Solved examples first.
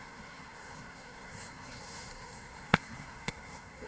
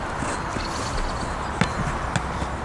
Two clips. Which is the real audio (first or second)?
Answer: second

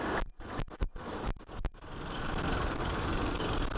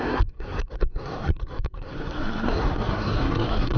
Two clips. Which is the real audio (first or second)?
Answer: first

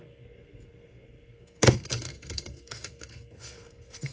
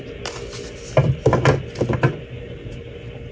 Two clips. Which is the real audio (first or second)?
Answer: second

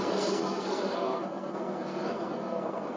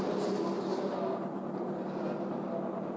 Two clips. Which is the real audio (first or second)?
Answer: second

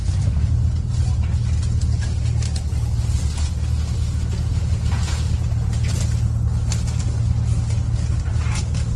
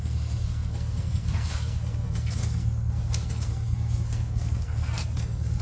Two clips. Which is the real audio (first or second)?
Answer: first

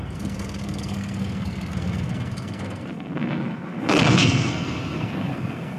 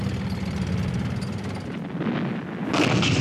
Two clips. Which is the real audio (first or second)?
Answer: second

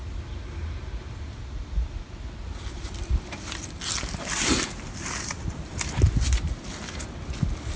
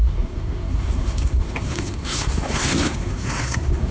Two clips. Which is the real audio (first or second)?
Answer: first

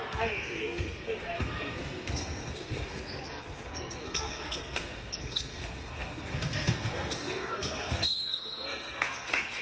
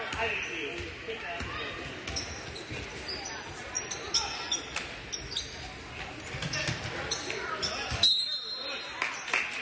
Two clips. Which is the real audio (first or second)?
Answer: second